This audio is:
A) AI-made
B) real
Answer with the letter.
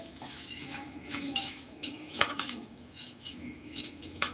A